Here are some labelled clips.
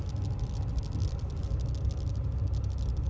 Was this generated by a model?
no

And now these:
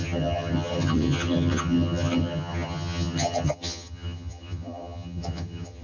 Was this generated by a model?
yes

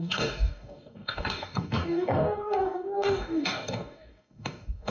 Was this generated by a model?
yes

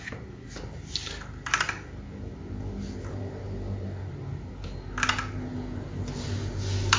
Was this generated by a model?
no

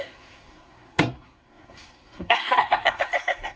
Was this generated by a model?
yes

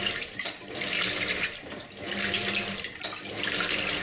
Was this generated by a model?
no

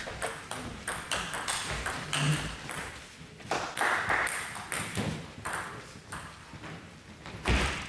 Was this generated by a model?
no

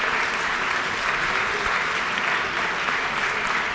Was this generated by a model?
no